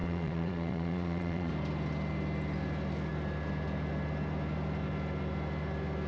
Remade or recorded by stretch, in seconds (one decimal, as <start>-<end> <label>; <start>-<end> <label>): 0.0-1.5 remade; 1.5-6.1 recorded